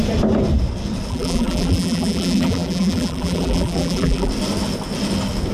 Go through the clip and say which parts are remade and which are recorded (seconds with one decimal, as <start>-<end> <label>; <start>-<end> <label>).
0.0-1.1 recorded; 1.1-4.3 remade; 4.3-5.5 recorded